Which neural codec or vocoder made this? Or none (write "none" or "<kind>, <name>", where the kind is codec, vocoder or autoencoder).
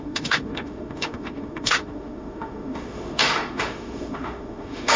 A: autoencoder, DAC-VAE